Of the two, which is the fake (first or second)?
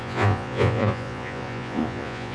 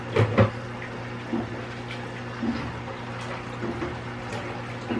first